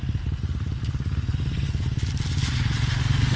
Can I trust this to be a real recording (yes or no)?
yes